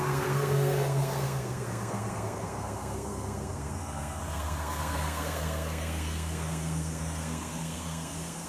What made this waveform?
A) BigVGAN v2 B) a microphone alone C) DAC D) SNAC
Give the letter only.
D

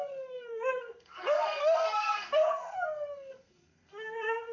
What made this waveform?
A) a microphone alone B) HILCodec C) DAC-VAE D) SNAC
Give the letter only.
D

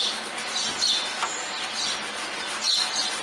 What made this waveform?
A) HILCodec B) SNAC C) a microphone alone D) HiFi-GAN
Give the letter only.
C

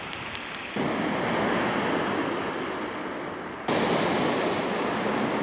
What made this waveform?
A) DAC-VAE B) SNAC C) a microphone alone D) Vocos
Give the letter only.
C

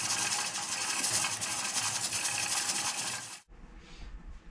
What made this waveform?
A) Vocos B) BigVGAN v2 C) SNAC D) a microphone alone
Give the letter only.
D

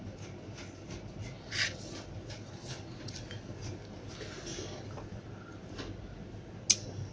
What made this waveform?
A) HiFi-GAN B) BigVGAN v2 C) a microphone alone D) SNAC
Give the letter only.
C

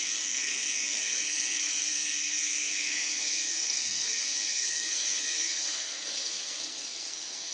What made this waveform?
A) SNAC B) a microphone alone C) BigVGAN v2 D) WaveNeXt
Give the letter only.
A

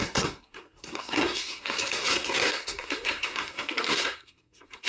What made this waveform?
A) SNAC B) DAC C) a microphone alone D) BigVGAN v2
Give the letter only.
A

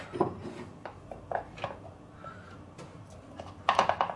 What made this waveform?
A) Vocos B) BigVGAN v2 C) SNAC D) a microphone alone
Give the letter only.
D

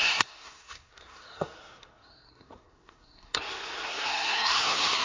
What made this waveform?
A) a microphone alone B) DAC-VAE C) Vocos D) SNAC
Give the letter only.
D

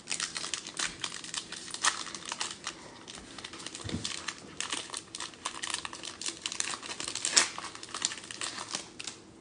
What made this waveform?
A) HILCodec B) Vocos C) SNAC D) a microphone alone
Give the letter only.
D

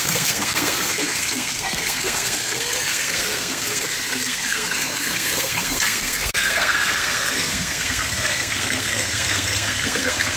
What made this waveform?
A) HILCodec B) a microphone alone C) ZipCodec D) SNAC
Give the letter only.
D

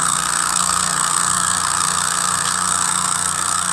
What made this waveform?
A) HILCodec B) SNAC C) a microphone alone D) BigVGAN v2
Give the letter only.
B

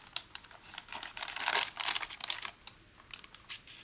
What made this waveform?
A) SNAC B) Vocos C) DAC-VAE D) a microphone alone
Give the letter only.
D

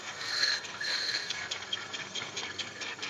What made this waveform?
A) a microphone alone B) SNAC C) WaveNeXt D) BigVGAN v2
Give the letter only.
B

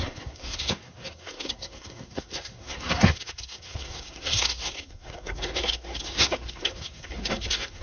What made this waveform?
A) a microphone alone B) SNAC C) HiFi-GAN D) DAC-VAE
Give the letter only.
B